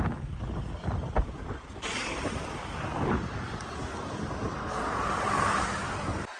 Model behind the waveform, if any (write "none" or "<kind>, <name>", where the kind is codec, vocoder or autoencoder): vocoder, BigVGAN v2